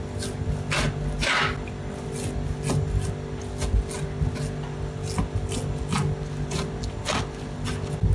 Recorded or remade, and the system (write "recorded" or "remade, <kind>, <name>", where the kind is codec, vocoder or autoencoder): recorded